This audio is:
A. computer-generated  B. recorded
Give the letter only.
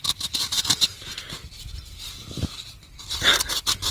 B